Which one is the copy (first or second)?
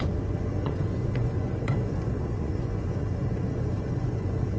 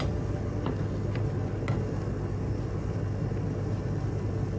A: first